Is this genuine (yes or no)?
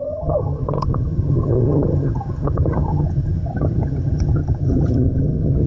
no